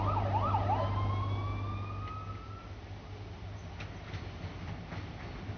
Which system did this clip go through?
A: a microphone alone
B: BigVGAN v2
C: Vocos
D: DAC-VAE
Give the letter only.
A